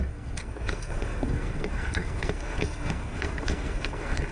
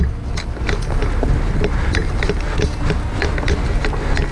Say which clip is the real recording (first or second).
second